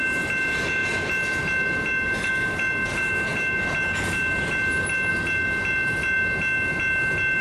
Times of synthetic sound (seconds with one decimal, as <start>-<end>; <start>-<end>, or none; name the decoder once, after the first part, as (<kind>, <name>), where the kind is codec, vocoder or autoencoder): none